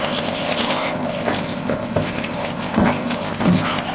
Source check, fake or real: fake